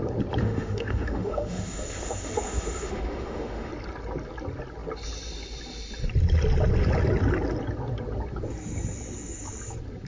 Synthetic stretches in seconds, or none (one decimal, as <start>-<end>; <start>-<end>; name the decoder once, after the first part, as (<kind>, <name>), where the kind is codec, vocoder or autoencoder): 0.4-3.7 (autoencoder, DAC-VAE)